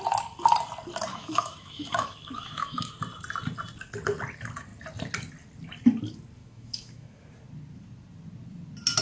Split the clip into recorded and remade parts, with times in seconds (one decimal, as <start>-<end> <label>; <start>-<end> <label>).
0.0-1.1 recorded; 1.1-2.9 remade; 2.9-6.4 recorded; 6.4-7.2 remade; 7.2-9.0 recorded